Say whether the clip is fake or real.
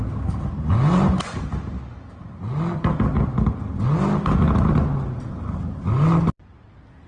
real